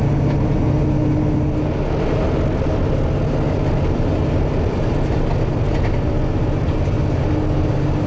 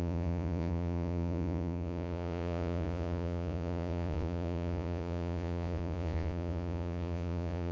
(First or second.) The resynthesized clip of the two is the second